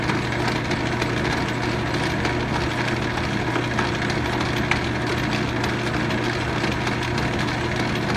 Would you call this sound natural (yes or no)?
yes